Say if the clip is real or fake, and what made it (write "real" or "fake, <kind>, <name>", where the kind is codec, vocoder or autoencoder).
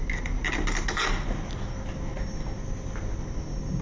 real